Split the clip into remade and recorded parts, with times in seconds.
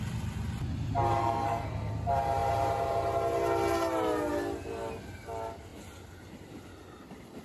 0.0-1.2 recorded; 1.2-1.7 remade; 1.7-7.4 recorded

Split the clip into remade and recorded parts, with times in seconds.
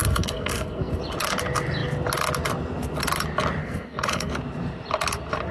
0.0-1.0 remade; 1.0-3.6 recorded; 3.6-4.3 remade; 4.3-5.5 recorded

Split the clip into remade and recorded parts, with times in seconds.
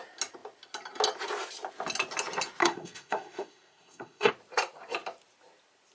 0.0-2.6 recorded; 2.6-4.3 remade; 4.3-5.9 recorded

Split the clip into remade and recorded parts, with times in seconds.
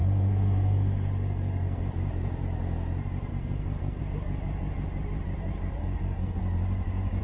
0.0-1.8 remade; 1.8-3.3 recorded; 3.3-4.0 remade; 4.0-5.8 recorded; 5.8-6.4 remade; 6.4-7.2 recorded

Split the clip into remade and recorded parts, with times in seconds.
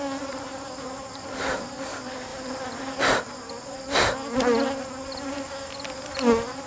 0.0-6.7 recorded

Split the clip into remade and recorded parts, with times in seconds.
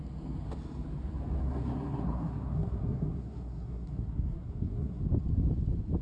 0.0-1.4 recorded; 1.4-5.0 remade; 5.0-6.0 recorded